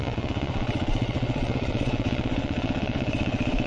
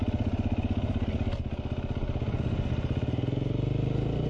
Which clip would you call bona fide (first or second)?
second